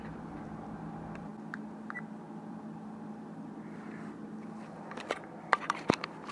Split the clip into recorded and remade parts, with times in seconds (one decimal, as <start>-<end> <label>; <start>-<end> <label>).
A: 0.0-6.3 remade